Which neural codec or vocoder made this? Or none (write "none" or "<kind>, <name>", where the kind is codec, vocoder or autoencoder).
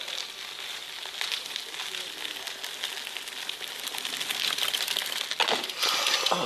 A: none